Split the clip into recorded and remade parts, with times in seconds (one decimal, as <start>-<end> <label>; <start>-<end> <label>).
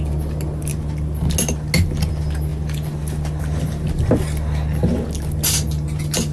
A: 0.0-6.3 recorded